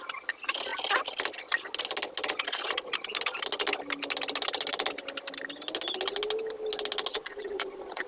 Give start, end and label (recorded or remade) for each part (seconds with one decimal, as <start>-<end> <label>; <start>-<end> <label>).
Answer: 0.0-7.1 recorded; 7.1-8.1 remade